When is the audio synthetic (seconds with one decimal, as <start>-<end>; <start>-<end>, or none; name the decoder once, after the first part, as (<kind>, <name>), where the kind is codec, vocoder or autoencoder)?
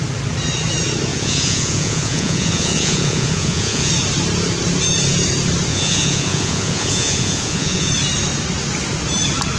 1.1-3.9 (vocoder, Vocos); 5.7-7.9